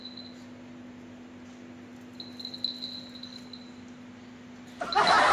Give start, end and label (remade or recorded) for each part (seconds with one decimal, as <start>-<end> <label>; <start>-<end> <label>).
0.0-5.3 recorded